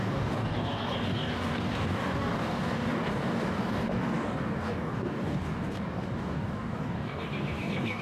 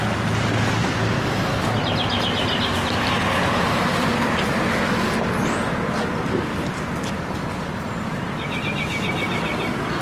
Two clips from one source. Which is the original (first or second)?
second